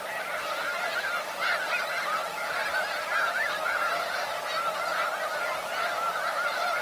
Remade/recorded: recorded